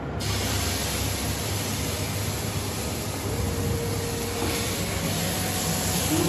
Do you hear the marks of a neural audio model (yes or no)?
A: no